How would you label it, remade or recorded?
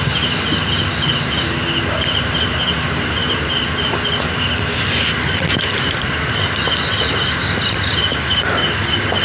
recorded